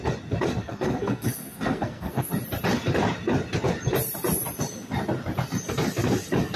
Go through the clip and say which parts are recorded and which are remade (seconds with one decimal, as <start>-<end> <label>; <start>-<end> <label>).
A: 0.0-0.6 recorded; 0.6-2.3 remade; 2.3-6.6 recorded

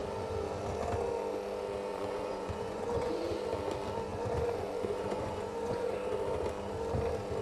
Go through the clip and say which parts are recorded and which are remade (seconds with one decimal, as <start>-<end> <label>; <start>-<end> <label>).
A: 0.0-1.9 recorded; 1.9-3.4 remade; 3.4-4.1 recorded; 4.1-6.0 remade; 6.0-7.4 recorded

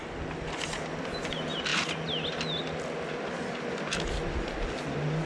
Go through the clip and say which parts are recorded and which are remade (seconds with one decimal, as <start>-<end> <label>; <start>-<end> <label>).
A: 0.0-5.3 recorded

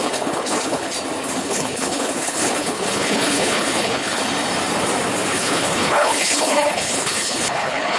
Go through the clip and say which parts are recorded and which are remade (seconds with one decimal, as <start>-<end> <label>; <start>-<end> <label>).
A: 0.0-0.9 remade; 0.9-1.4 recorded; 1.4-4.2 remade; 4.2-5.3 recorded; 5.3-8.0 remade